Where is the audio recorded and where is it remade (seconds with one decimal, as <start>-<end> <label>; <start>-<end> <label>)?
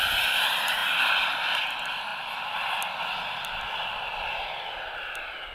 0.0-5.5 recorded